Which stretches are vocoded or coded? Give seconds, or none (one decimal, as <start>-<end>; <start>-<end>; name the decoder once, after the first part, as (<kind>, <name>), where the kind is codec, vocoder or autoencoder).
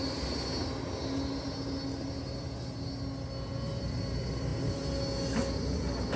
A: none